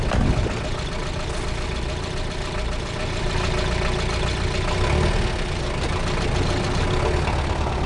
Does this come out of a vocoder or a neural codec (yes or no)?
no